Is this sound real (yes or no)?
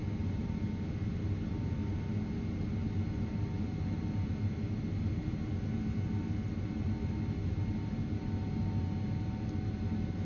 yes